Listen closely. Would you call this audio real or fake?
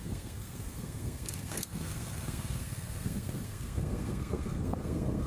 fake